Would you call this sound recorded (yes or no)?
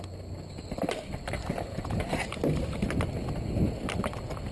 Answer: yes